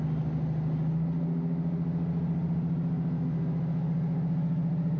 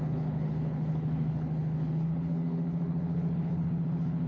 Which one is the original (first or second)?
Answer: first